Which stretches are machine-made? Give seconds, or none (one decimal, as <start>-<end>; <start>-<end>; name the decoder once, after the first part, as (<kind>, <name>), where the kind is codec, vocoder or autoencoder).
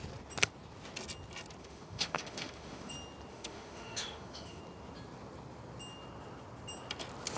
1.6-2.9 (autoencoder, DAC-VAE); 3.3-4.6